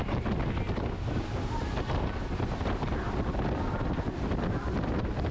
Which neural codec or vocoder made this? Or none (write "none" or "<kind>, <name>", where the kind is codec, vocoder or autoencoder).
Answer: none